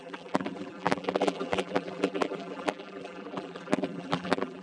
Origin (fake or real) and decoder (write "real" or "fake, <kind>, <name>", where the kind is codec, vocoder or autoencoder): fake, vocoder, BigVGAN v2